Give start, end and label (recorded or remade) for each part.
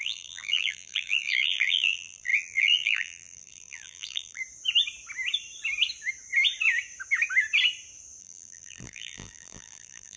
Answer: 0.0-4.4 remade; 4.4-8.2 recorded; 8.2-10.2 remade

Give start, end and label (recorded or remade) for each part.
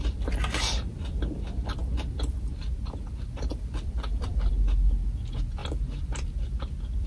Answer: 0.0-3.5 recorded; 3.5-4.5 remade; 4.5-5.6 recorded; 5.6-6.3 remade; 6.3-7.1 recorded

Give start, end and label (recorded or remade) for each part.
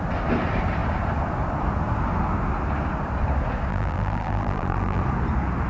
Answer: 0.0-3.7 recorded; 3.7-5.0 remade; 5.0-5.7 recorded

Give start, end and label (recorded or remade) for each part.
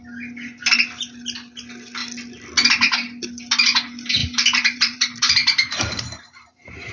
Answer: 0.0-4.2 recorded; 4.2-6.9 remade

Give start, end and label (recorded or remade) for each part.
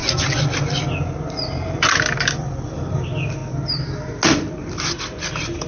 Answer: 0.0-1.3 recorded; 1.3-3.4 remade; 3.4-4.5 recorded; 4.5-5.7 remade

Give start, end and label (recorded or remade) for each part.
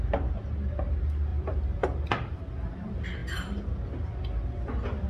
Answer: 0.0-1.3 recorded; 1.3-2.4 remade; 2.4-5.1 recorded